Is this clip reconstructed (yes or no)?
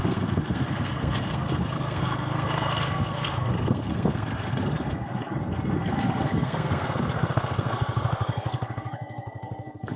yes